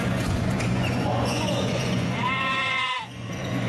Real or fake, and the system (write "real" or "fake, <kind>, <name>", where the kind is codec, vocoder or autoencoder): fake, vocoder, Vocos